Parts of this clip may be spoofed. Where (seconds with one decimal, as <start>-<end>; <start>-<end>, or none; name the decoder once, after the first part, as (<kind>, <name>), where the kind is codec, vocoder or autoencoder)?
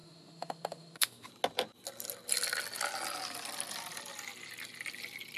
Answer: 0.0-1.3 (autoencoder, DAC-VAE)